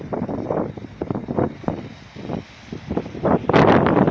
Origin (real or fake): real